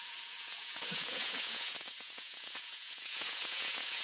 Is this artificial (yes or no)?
yes